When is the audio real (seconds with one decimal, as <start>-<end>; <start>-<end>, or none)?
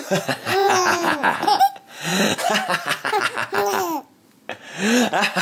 0.0-0.6; 1.6-5.4